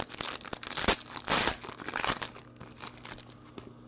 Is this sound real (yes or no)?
yes